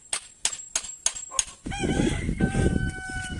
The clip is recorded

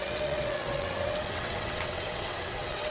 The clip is remade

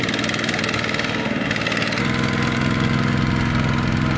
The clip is recorded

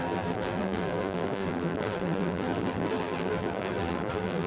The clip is remade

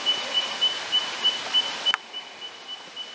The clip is recorded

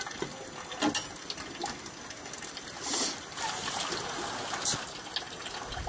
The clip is recorded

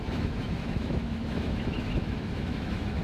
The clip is remade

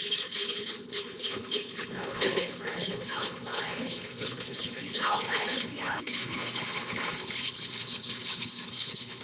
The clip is remade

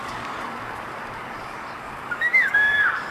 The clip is remade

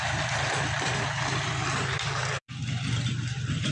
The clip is remade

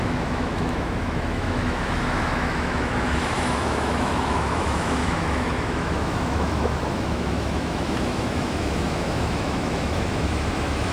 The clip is remade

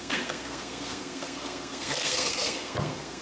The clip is remade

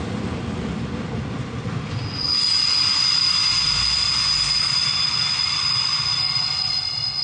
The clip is recorded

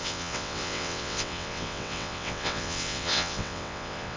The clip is remade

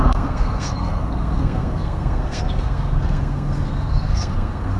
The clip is remade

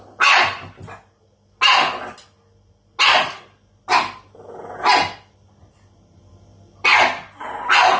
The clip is recorded